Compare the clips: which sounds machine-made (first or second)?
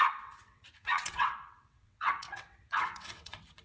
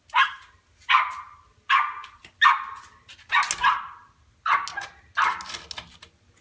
first